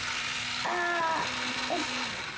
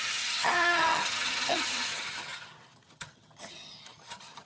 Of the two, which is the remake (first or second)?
second